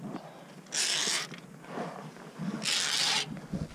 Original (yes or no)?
yes